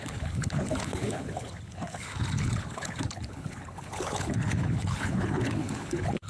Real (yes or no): no